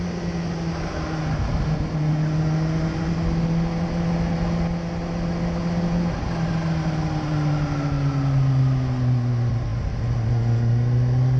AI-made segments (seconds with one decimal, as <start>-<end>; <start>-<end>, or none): none